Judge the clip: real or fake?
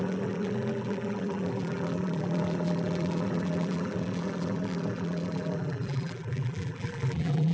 fake